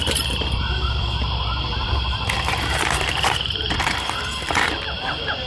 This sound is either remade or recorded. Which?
remade